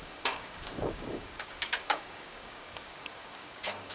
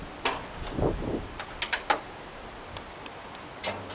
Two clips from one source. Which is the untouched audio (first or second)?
second